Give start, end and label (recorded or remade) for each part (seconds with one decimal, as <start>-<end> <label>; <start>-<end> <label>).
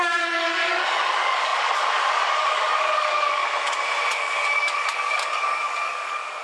0.0-3.4 remade; 3.4-4.1 recorded; 4.1-6.4 remade